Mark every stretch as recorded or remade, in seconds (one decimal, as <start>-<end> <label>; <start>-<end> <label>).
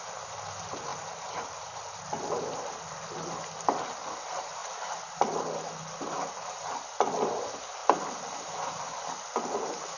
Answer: 0.0-10.0 recorded